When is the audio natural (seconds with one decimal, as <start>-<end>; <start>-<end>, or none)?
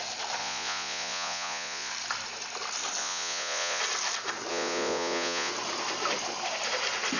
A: 0.0-0.4; 1.9-3.0; 3.8-4.5; 5.5-7.2